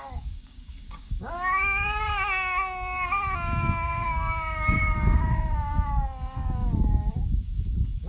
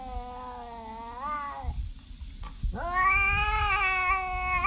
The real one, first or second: second